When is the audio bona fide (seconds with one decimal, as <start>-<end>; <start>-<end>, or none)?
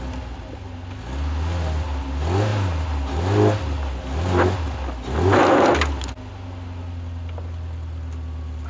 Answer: 0.0-8.7